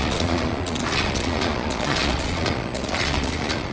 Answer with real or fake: fake